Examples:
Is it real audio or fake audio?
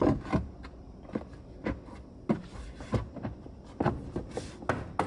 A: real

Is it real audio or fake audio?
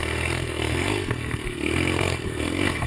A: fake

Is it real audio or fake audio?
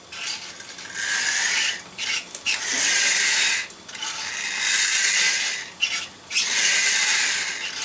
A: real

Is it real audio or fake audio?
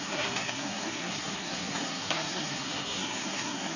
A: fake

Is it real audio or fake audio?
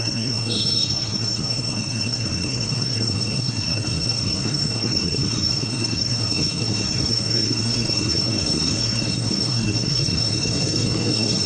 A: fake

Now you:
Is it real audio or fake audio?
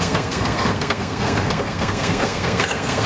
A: fake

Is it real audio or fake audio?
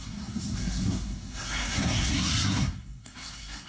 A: fake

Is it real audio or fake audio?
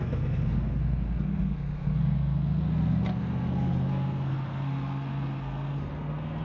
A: fake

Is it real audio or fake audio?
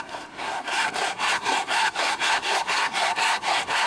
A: fake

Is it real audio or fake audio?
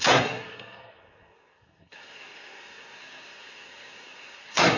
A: fake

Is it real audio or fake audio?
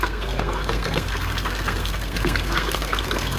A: fake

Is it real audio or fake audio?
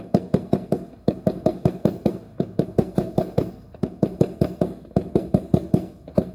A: fake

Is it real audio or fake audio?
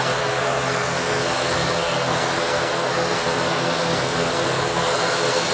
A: fake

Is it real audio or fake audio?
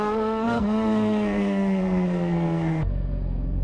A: fake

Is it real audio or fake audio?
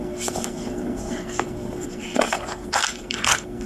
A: fake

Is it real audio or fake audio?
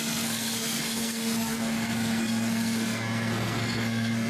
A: fake